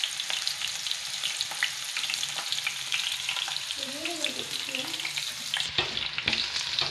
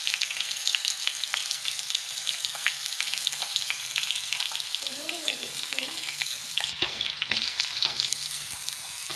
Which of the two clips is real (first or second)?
first